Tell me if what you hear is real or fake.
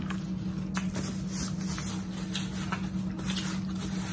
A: real